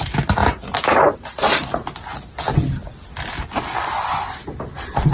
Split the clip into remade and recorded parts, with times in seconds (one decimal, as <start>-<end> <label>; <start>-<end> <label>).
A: 0.0-5.1 recorded